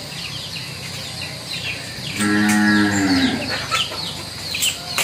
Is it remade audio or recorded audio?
recorded